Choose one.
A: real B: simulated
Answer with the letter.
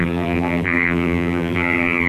B